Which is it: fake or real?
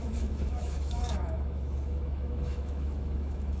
fake